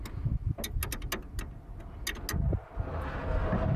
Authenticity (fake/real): real